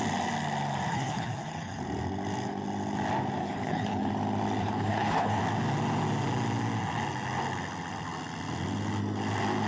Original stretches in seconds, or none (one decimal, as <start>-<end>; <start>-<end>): 0.0-0.9; 1.8-3.4; 4.1-4.6; 5.4-9.7